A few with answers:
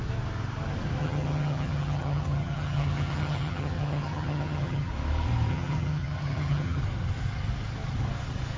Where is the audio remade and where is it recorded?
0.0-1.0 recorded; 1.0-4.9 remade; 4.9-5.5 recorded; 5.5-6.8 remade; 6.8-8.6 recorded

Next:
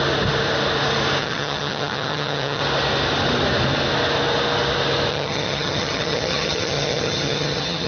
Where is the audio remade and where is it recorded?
0.0-1.2 recorded; 1.2-2.6 remade; 2.6-5.1 recorded; 5.1-7.9 remade

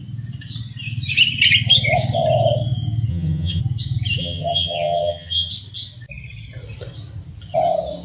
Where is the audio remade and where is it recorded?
0.0-3.1 recorded; 3.1-3.6 remade; 3.6-4.2 recorded; 4.2-5.5 remade; 5.5-8.0 recorded